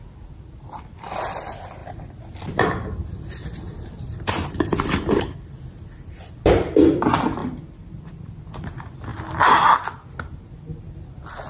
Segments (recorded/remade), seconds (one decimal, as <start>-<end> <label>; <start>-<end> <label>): 0.0-3.7 recorded; 3.7-5.1 remade; 5.1-7.4 recorded; 7.4-8.1 remade; 8.1-11.5 recorded